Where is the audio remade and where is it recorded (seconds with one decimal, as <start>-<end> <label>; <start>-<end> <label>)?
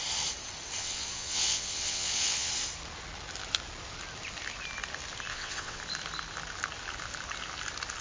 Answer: 0.0-0.8 recorded; 0.8-2.5 remade; 2.5-5.3 recorded; 5.3-5.8 remade; 5.8-8.0 recorded